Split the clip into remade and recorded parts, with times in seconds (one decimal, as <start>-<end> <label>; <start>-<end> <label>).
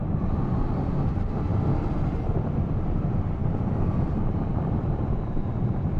0.0-1.5 remade; 1.5-2.7 recorded; 2.7-3.4 remade; 3.4-4.5 recorded; 4.5-6.0 remade